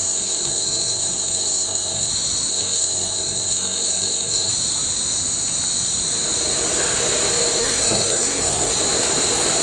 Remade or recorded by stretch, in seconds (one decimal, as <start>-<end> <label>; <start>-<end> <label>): 0.0-2.1 remade; 2.1-2.5 recorded; 2.5-4.5 remade; 4.5-7.6 recorded; 7.6-8.7 remade; 8.7-9.6 recorded